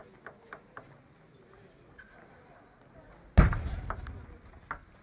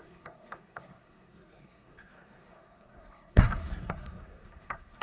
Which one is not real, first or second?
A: second